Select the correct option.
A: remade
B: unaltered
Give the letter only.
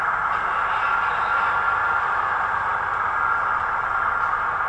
B